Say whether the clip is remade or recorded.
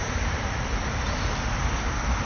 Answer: recorded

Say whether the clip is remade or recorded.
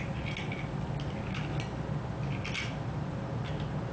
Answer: recorded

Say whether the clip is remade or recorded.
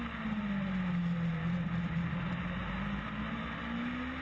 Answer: recorded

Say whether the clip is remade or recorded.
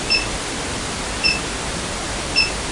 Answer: remade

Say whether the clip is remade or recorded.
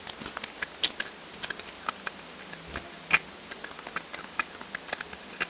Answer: recorded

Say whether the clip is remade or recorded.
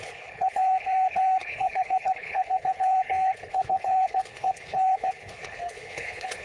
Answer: remade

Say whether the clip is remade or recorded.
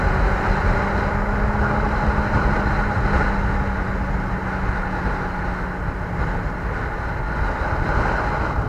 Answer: recorded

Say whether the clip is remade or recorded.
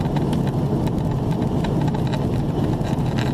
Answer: recorded